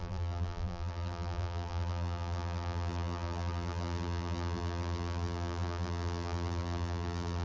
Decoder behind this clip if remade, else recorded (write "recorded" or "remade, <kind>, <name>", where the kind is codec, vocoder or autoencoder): remade, vocoder, BigVGAN v2